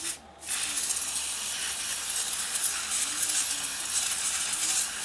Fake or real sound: real